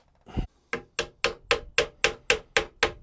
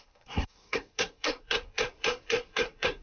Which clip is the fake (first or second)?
second